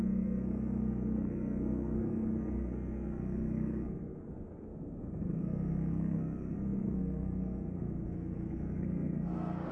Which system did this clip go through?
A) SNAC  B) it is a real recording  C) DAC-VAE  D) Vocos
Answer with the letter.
A